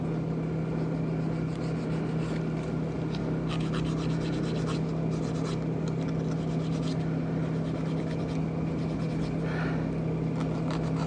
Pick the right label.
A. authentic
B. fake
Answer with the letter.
A